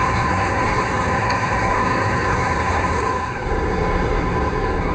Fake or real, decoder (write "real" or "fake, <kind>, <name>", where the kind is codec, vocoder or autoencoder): fake, codec, SNAC